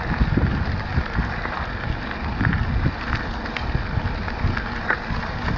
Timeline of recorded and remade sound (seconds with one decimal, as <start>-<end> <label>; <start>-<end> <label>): 0.0-5.6 recorded